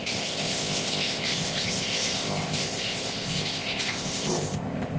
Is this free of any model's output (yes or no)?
no